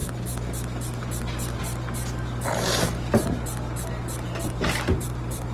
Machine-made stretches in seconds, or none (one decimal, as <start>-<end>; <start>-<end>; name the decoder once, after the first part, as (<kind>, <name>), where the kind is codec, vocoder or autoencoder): none